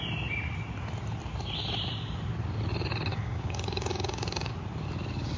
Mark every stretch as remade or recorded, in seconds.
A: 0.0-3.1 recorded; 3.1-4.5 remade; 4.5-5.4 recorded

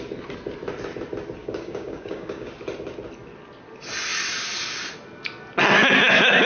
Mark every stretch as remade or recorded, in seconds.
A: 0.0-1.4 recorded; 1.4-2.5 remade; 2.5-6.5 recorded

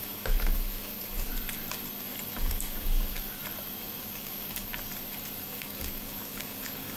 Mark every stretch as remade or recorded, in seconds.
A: 0.0-1.3 remade; 1.3-2.3 recorded; 2.3-3.4 remade; 3.4-4.0 recorded; 4.0-4.7 remade; 4.7-5.4 recorded; 5.4-7.0 remade

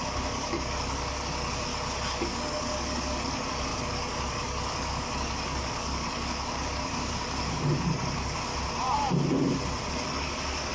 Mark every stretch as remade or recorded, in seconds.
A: 0.0-1.7 remade; 1.7-2.2 recorded; 2.2-8.5 remade; 8.5-9.9 recorded; 9.9-10.7 remade

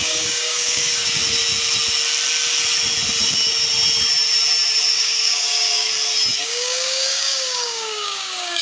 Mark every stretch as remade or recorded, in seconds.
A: 0.0-1.2 remade; 1.2-4.9 recorded; 4.9-5.9 remade; 5.9-6.4 recorded; 6.4-8.6 remade